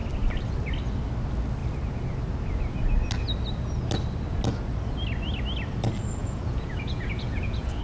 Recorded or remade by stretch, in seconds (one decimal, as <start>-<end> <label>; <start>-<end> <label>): 0.0-6.2 recorded; 6.2-7.8 remade